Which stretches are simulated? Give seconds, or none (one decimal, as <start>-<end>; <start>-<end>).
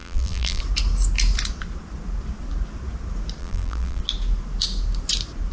0.0-0.6; 3.4-4.0